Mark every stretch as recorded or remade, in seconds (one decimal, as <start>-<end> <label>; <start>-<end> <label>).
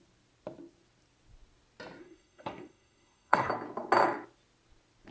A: 0.0-2.0 recorded; 2.0-3.5 remade; 3.5-5.1 recorded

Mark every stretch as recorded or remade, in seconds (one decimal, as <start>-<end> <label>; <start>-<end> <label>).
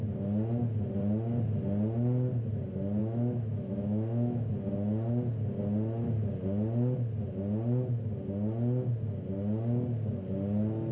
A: 0.0-3.0 recorded; 3.0-4.5 remade; 4.5-10.9 recorded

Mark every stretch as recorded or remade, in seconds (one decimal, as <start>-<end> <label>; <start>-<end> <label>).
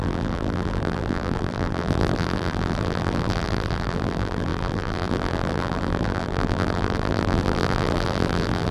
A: 0.0-8.7 remade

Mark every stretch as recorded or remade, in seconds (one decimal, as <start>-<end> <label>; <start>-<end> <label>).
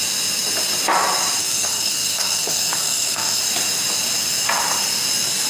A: 0.0-1.4 recorded; 1.4-3.4 remade; 3.4-5.5 recorded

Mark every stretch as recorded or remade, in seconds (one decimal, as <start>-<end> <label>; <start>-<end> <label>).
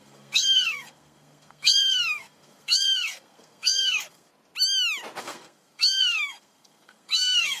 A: 0.0-4.3 remade; 4.3-5.2 recorded; 5.2-7.6 remade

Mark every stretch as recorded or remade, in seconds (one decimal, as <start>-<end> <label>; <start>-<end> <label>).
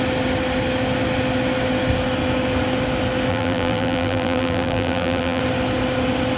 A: 0.0-3.3 recorded; 3.3-5.4 remade; 5.4-6.4 recorded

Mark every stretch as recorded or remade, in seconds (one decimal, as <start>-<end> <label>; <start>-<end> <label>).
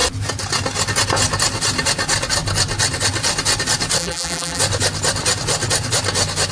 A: 0.0-4.0 recorded; 4.0-4.6 remade; 4.6-6.5 recorded